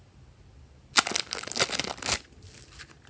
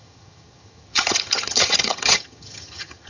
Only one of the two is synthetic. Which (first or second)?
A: second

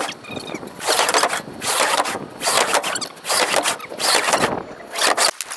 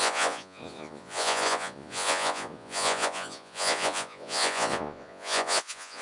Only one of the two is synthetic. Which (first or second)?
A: second